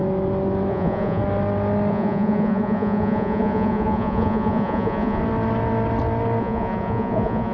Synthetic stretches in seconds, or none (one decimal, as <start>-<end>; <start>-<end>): 0.7-1.2; 1.9-5.2; 6.4-7.5